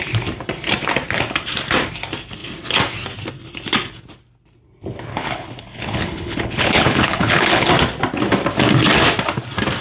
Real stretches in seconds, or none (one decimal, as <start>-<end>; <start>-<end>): 0.0-5.1; 7.7-9.8